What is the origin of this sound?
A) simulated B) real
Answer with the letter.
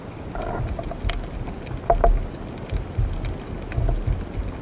B